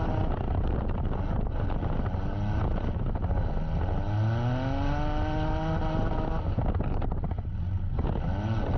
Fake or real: real